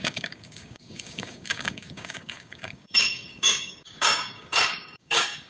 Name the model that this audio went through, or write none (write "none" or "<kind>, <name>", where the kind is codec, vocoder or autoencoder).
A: codec, DAC